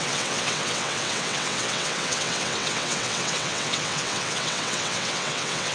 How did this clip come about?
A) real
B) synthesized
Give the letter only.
B